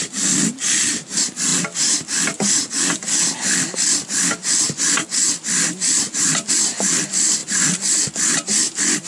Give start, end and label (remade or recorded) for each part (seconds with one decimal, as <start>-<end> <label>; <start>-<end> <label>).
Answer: 0.0-9.1 recorded

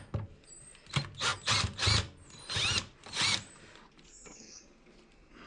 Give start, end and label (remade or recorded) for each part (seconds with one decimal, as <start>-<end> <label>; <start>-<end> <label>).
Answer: 0.0-4.1 recorded; 4.1-4.6 remade; 4.6-5.5 recorded